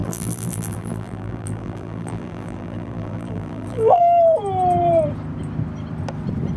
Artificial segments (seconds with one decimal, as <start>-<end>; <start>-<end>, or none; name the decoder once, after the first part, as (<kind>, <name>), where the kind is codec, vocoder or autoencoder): 0.0-4.0 (vocoder, BigVGAN v2)